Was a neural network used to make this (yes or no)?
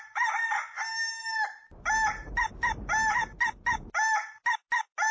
no